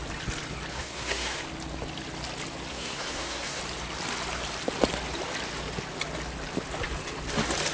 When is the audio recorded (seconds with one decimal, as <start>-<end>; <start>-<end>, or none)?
0.0-0.7; 1.4-2.7; 3.6-7.7